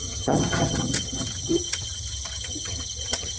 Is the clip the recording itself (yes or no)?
no